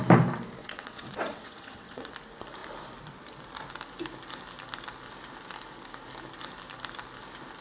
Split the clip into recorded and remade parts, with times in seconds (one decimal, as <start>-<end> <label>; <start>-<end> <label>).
0.0-0.6 recorded; 0.6-2.1 remade; 2.1-7.6 recorded